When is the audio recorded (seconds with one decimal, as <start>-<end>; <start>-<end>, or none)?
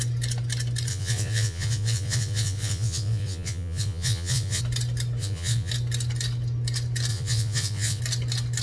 0.0-0.9; 4.6-5.2; 5.7-7.1; 8.0-8.6